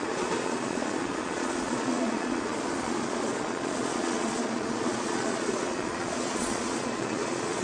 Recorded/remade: remade